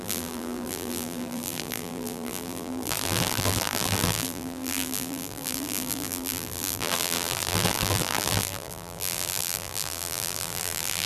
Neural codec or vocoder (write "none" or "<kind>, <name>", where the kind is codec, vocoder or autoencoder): vocoder, BigVGAN v2